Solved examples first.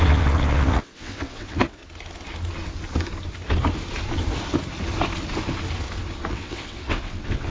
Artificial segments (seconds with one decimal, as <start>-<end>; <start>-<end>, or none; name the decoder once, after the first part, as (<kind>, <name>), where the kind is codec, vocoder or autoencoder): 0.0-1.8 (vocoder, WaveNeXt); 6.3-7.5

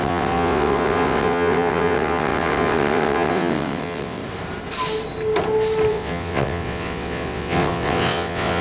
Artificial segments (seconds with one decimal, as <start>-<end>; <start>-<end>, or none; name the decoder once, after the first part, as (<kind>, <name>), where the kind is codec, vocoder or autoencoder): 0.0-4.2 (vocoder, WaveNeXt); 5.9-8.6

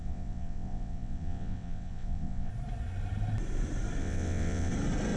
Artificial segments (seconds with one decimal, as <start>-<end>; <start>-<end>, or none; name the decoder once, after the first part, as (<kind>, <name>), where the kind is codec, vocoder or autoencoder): 0.0-2.5 (vocoder, WaveNeXt); 4.0-4.7